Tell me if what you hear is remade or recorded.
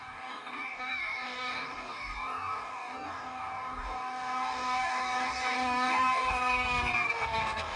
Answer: remade